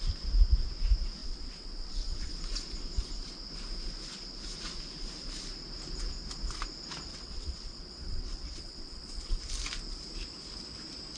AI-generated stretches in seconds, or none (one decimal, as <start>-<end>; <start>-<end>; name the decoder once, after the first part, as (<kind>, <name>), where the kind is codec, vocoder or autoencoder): 1.2-2.3 (vocoder, WaveNeXt); 7.1-9.4